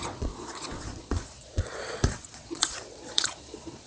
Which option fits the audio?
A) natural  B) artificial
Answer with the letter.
B